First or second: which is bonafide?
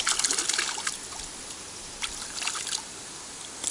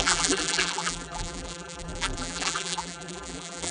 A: first